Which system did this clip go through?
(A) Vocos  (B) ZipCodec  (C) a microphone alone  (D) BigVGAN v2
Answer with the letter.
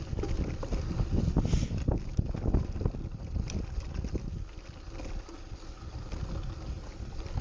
C